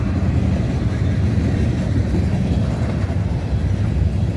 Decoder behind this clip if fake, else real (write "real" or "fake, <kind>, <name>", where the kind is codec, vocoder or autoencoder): real